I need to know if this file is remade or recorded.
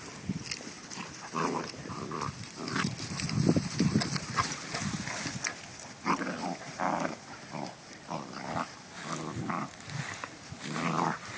recorded